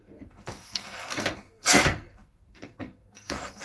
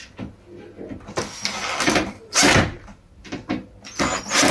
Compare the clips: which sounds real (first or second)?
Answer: second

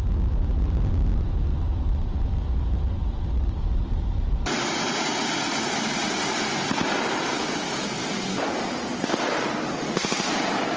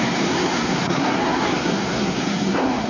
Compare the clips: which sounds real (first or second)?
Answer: first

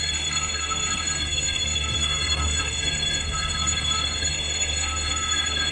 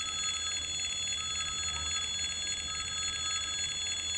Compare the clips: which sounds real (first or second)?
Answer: second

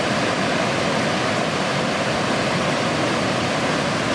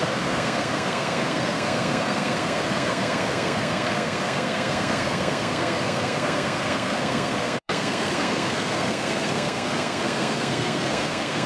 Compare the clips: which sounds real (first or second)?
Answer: first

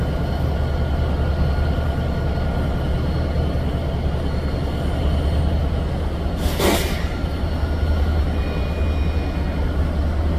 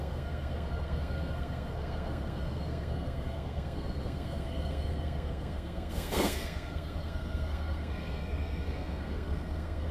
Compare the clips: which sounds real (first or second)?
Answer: first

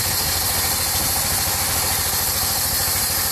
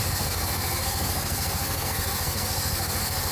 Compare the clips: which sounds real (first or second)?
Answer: first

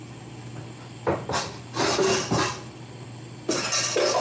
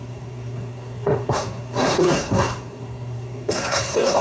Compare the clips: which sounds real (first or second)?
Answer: first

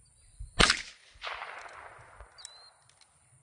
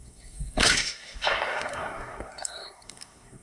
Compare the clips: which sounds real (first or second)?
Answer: first